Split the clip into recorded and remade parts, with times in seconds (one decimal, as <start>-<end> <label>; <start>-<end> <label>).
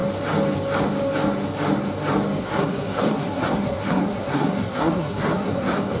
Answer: 0.0-2.4 recorded; 2.4-6.0 remade